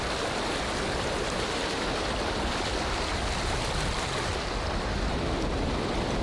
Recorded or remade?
recorded